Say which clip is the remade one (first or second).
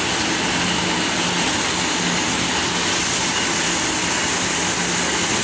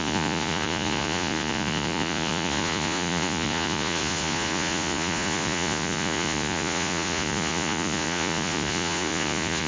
second